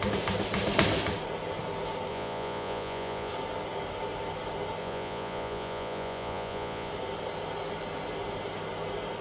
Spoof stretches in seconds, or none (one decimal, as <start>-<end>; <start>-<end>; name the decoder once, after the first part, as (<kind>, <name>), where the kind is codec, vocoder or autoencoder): 2.1-3.3 (vocoder, Vocos); 4.8-6.9